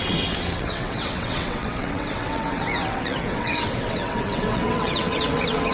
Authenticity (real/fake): fake